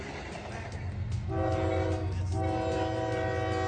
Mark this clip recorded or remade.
recorded